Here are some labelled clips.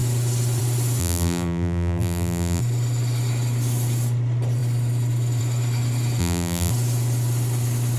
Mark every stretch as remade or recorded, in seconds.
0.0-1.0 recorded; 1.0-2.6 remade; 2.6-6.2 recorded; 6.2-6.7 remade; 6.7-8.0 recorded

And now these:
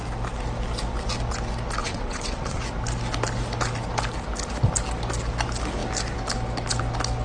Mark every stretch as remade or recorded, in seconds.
0.0-1.8 recorded; 1.8-2.6 remade; 2.6-7.2 recorded

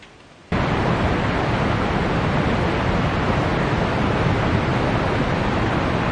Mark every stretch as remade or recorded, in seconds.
0.0-6.1 recorded

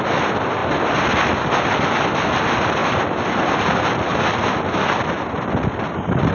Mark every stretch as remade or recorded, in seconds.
0.0-6.3 recorded

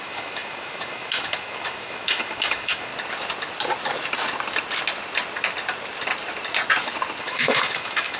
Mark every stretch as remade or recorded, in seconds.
0.0-2.9 remade; 2.9-7.2 recorded; 7.2-8.2 remade

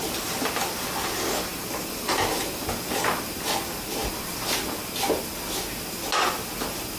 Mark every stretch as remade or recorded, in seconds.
0.0-7.0 recorded

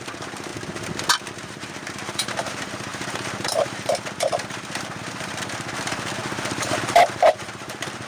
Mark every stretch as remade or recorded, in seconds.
0.0-0.5 remade; 0.5-1.3 recorded; 1.3-8.1 remade